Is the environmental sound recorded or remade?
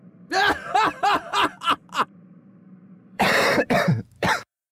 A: remade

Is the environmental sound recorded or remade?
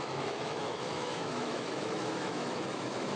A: remade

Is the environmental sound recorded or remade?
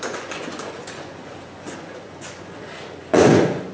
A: remade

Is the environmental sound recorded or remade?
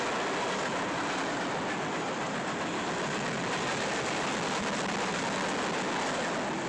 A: recorded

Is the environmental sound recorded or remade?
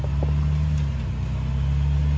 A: recorded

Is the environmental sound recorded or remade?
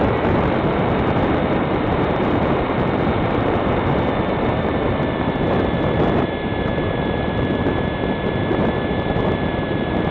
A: remade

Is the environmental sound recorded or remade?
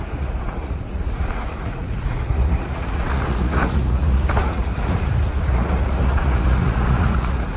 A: remade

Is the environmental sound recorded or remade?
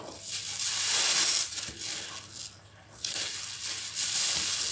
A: recorded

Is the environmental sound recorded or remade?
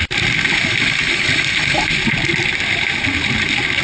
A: remade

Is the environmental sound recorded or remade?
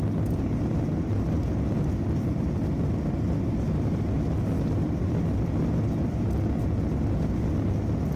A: recorded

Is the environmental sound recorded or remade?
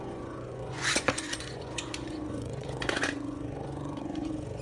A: remade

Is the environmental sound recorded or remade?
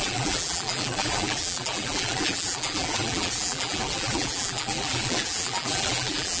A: remade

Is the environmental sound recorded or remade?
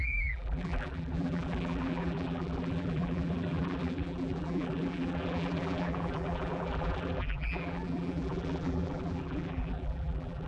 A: remade